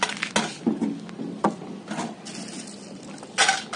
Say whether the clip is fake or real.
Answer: real